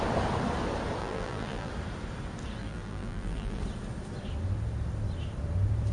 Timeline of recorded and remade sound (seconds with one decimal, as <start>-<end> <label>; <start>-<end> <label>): 0.0-1.0 recorded; 1.0-1.7 remade; 1.7-2.6 recorded; 2.6-3.6 remade; 3.6-5.9 recorded